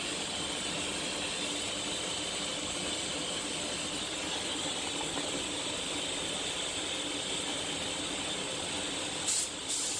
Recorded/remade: recorded